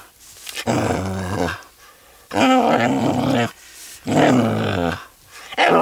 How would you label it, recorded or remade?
recorded